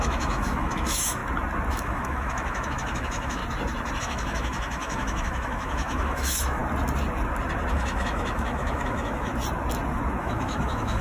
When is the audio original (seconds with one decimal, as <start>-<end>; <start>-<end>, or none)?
1.2-1.7; 3.4-4.0; 6.6-7.7; 9.3-10.2